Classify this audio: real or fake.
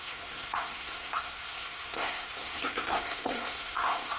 fake